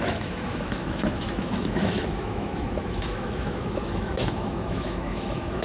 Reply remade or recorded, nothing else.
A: remade